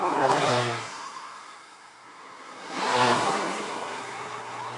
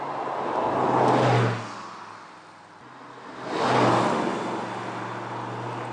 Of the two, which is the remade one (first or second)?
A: first